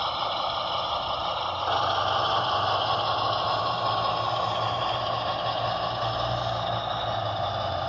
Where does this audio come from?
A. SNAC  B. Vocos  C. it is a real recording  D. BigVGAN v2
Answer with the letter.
C